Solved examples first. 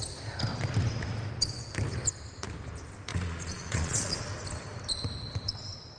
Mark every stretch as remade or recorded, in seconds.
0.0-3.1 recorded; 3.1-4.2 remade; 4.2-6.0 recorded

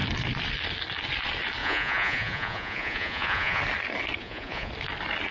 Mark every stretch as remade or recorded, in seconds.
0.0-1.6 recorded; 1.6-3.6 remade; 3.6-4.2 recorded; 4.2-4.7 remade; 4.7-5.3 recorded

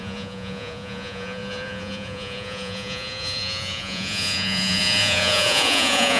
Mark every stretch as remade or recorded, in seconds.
0.0-6.2 remade

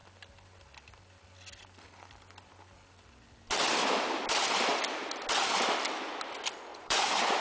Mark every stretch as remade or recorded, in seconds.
0.0-6.7 recorded; 6.7-7.4 remade

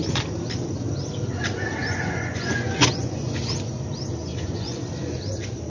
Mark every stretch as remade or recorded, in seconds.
0.0-1.8 recorded; 1.8-3.3 remade; 3.3-4.2 recorded; 4.2-4.8 remade; 4.8-5.7 recorded

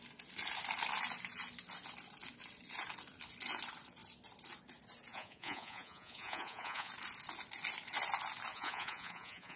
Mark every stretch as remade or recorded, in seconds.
0.0-5.1 recorded; 5.1-6.9 remade; 6.9-8.5 recorded; 8.5-9.6 remade

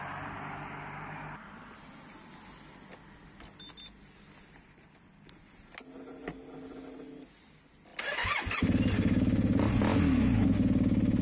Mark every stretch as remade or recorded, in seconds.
0.0-11.2 recorded

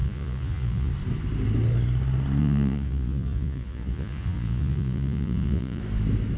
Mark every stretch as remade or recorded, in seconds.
0.0-0.9 remade; 0.9-2.4 recorded; 2.4-5.8 remade; 5.8-6.4 recorded